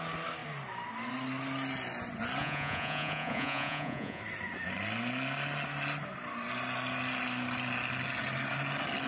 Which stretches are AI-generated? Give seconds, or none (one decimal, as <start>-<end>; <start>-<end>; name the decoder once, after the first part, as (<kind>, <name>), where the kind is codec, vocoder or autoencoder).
2.4-4.2 (vocoder, Vocos)